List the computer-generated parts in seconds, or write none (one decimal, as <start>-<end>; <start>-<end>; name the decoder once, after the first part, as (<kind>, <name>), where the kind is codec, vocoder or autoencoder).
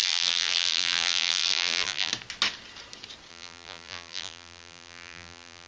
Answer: 0.0-2.1 (vocoder, BigVGAN v2); 3.3-5.7